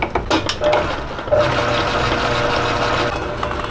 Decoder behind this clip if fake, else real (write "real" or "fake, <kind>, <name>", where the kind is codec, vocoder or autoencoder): real